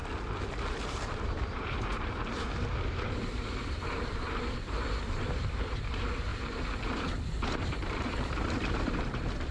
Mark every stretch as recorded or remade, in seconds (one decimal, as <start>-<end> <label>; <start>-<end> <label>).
0.0-0.7 recorded; 0.7-6.3 remade; 6.3-7.6 recorded; 7.6-9.5 remade